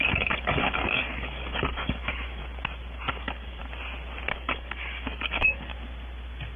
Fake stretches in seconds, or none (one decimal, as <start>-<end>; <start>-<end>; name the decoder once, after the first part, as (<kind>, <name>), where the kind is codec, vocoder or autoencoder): 0.0-2.4 (codec, DAC); 3.1-3.6; 4.3-5.7

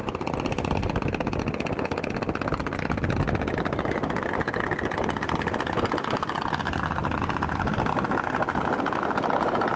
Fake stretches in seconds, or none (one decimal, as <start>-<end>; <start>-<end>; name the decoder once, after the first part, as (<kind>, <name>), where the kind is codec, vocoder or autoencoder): none

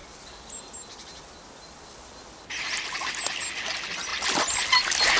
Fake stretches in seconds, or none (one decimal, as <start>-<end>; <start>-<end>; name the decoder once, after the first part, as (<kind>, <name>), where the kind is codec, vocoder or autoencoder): none